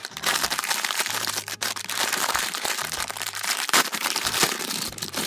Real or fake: fake